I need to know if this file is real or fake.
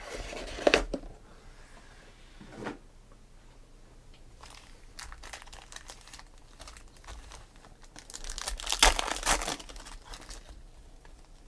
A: real